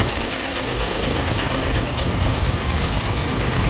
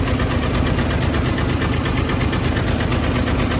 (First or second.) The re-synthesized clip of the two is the first